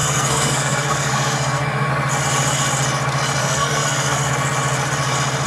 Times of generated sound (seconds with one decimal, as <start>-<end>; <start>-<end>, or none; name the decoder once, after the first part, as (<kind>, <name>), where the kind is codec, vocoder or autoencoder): 0.0-1.9 (codec, SNAC); 3.4-4.3